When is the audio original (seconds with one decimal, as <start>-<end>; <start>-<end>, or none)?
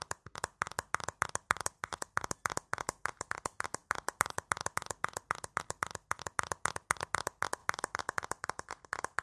0.0-9.2